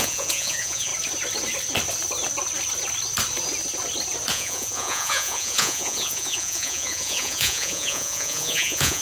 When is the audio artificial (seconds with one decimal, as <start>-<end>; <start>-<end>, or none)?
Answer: 0.0-0.9; 4.3-9.0